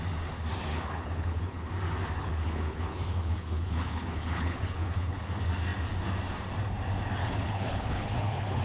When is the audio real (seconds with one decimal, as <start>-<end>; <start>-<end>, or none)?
0.0-0.7; 1.7-2.2; 5.2-7.2